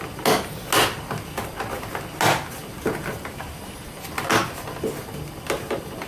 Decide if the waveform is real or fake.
real